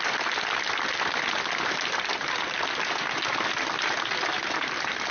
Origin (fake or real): real